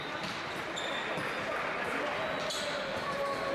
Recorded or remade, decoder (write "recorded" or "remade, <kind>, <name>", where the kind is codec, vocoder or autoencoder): recorded